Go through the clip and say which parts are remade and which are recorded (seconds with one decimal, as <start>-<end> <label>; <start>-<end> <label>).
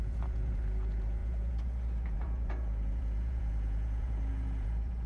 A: 0.0-5.1 remade